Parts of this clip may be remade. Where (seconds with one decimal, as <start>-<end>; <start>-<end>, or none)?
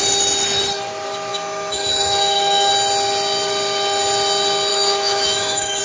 1.3-2.7; 4.7-5.8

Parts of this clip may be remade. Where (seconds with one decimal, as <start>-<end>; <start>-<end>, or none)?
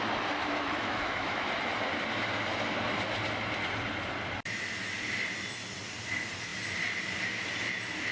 0.4-1.5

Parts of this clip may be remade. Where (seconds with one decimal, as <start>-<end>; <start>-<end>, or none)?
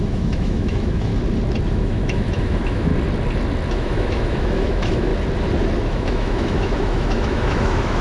0.0-1.1; 1.7-2.9; 3.7-5.1; 5.9-8.0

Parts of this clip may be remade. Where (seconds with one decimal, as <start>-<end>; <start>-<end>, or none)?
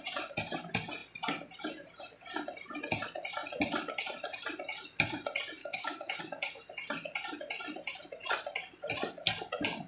5.6-6.2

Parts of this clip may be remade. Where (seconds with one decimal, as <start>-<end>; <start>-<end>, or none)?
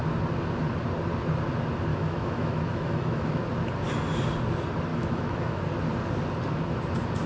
1.9-3.4; 4.9-5.6